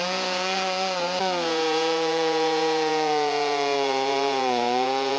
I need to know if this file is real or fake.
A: fake